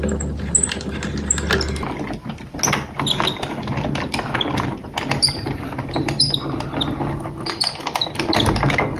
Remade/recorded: recorded